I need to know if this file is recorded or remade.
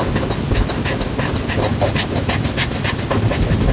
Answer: recorded